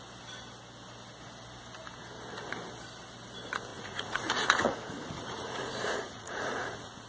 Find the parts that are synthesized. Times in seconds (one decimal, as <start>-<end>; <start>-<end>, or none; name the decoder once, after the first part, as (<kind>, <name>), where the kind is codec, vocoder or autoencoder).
3.7-7.1 (vocoder, Vocos)